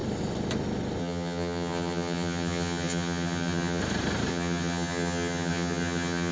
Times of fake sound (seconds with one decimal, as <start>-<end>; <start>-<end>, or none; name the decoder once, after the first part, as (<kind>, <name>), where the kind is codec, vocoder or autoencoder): 1.0-3.8 (vocoder, HiFi-GAN); 4.3-6.3